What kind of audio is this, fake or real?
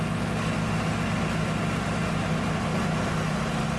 real